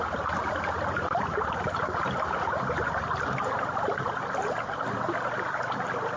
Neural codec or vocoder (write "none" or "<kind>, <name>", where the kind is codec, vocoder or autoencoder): none